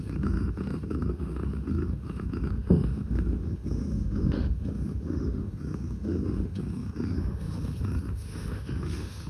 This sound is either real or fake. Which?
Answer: fake